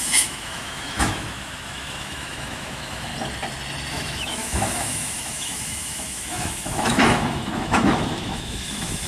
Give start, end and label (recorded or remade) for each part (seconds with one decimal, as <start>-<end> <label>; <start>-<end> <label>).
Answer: 0.0-3.1 remade; 3.1-3.9 recorded; 3.9-9.1 remade